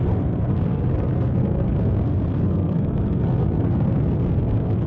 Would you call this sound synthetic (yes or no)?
yes